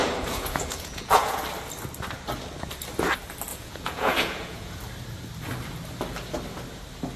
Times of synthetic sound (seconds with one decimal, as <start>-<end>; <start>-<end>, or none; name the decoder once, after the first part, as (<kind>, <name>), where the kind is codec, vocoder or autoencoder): 0.0-1.4 (vocoder, Vocos); 3.5-4.8